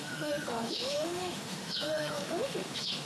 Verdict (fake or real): fake